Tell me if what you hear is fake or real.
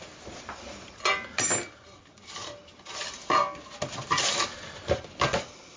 real